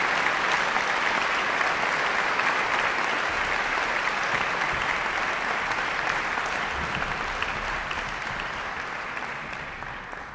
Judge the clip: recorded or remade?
recorded